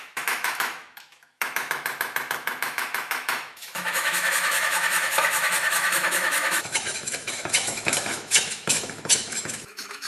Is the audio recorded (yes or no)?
no